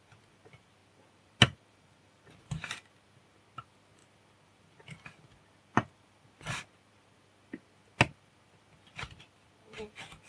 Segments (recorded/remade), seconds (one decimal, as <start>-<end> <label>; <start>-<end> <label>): 0.0-0.8 recorded; 0.8-2.3 remade; 2.3-10.3 recorded

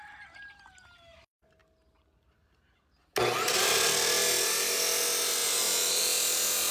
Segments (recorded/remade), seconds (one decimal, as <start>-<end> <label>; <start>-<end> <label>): 0.0-5.4 recorded; 5.4-6.0 remade; 6.0-6.7 recorded

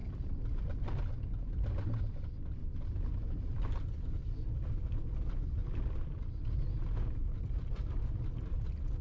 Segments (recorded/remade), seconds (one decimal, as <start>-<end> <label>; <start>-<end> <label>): 0.0-0.8 remade; 0.8-2.6 recorded; 2.6-3.1 remade; 3.1-5.6 recorded; 5.6-6.3 remade; 6.3-9.0 recorded

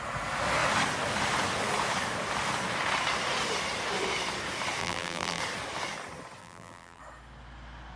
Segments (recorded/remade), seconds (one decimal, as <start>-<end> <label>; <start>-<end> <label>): 0.0-4.8 recorded; 4.8-5.4 remade; 5.4-6.4 recorded; 6.4-7.0 remade; 7.0-8.0 recorded

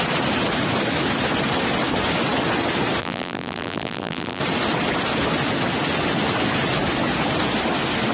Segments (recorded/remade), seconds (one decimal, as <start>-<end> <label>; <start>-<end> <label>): 0.0-3.0 recorded; 3.0-4.4 remade; 4.4-8.1 recorded

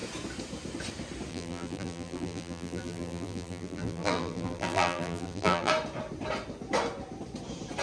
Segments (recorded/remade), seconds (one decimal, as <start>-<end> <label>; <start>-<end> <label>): 0.0-1.3 recorded; 1.3-5.7 remade; 5.7-7.8 recorded

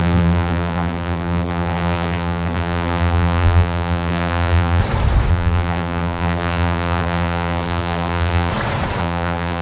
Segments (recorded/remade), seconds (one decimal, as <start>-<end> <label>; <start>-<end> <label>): 0.0-4.8 remade; 4.8-5.3 recorded; 5.3-8.5 remade; 8.5-9.0 recorded; 9.0-9.6 remade

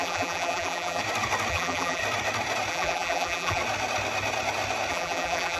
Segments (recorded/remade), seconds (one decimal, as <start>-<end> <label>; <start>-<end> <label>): 0.0-1.0 remade; 1.0-1.5 recorded; 1.5-2.0 remade; 2.0-2.7 recorded; 2.7-3.6 remade; 3.6-4.9 recorded; 4.9-5.6 remade